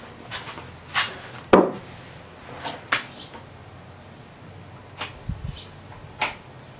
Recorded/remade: recorded